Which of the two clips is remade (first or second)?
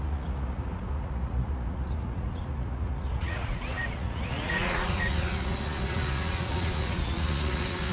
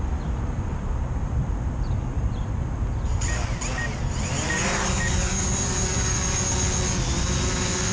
first